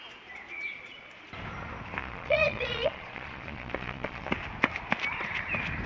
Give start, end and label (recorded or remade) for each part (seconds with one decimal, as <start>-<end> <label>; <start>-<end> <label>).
0.0-0.7 recorded; 0.7-1.2 remade; 1.2-2.0 recorded; 2.0-4.3 remade; 4.3-5.9 recorded